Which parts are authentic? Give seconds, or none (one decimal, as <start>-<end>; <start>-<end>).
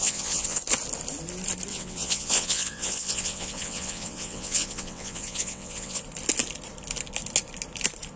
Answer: 0.6-1.7; 6.0-8.2